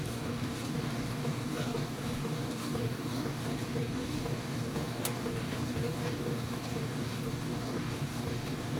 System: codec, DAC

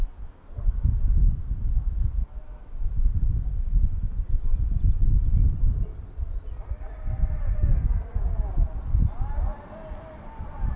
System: none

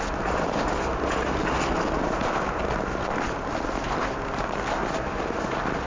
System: none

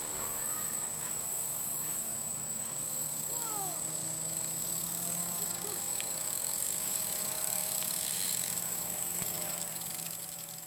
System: codec, DAC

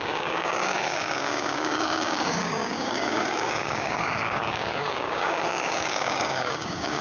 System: codec, DAC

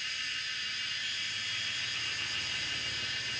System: none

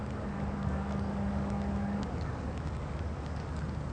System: codec, DAC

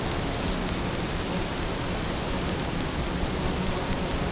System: none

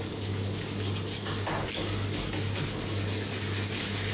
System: codec, DAC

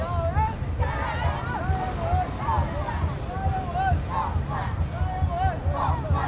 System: none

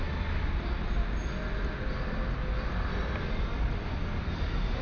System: none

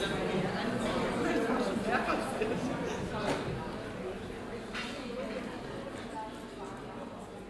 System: none